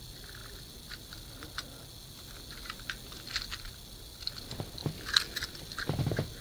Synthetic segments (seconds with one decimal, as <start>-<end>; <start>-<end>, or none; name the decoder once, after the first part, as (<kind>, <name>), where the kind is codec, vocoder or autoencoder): none